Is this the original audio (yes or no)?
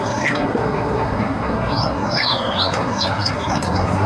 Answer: no